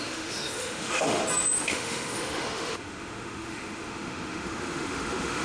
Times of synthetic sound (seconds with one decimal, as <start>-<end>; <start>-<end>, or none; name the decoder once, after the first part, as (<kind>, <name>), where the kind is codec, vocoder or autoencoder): 0.0-1.2 (autoencoder, DAC-VAE); 1.7-5.4